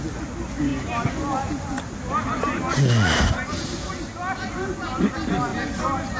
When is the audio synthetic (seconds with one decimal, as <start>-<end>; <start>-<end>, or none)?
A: none